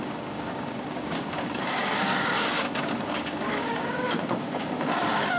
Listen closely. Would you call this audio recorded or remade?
remade